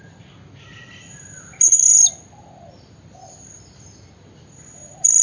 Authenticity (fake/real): real